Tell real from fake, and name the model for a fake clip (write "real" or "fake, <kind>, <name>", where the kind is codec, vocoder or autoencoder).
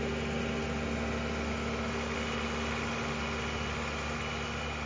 real